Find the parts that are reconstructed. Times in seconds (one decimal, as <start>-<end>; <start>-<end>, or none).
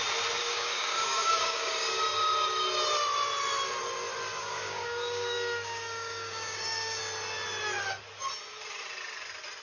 0.4-2.0; 4.4-7.0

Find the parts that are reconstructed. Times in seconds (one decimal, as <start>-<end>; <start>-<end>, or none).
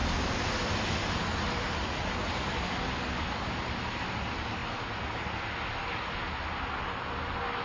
none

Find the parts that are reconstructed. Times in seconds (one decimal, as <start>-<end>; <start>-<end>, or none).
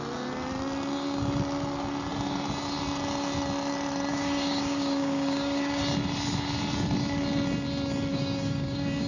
4.1-5.8; 8.1-9.1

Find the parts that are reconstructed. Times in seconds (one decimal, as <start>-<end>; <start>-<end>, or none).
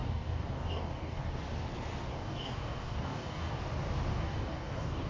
0.0-1.4; 2.1-3.6; 4.1-5.1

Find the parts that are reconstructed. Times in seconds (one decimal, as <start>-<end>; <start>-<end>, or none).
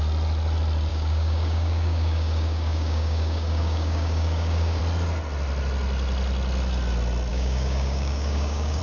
0.9-4.8; 7.3-8.8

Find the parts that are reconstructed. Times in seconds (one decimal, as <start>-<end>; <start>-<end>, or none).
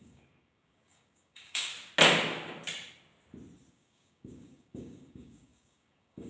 0.0-1.7; 3.7-6.3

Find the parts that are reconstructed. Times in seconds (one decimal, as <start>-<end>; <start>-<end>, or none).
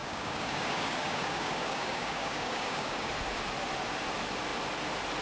0.0-3.1